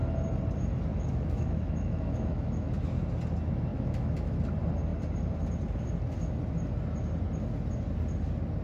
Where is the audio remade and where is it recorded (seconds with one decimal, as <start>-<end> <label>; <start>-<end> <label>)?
0.0-0.9 recorded; 0.9-2.7 remade; 2.7-3.7 recorded; 3.7-4.4 remade; 4.4-8.6 recorded